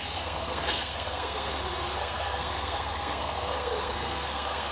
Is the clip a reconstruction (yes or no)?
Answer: yes